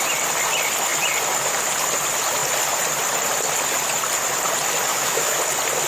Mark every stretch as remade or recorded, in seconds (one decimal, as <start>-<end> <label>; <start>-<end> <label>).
0.0-4.9 recorded; 4.9-5.4 remade; 5.4-5.9 recorded